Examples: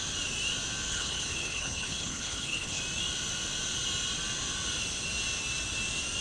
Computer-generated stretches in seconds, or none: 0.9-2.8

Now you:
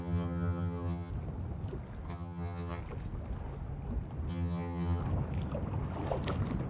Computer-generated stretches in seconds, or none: 0.0-1.1; 2.1-2.8; 4.3-5.0